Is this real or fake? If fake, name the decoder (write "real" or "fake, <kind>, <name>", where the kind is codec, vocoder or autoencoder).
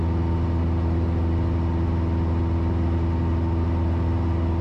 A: real